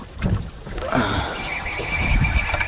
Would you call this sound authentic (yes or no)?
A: no